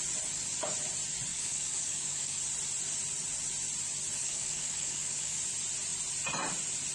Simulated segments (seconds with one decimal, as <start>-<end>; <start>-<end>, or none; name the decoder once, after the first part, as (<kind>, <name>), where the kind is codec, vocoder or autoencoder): 1.3-2.4 (codec, DAC); 4.2-5.4